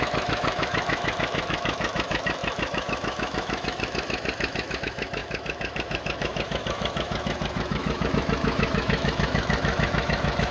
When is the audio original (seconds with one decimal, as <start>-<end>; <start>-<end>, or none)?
none